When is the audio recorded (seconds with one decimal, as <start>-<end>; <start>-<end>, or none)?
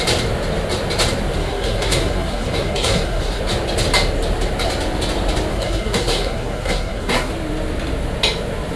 0.0-1.4; 3.4-5.5; 7.3-8.8